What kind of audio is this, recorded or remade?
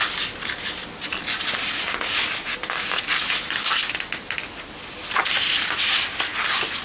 recorded